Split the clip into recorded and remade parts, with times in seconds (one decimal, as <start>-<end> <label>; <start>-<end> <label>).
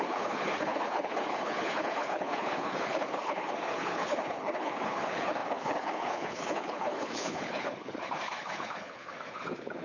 0.0-9.8 remade